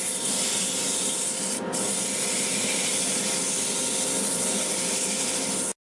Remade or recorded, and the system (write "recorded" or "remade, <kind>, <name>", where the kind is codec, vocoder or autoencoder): recorded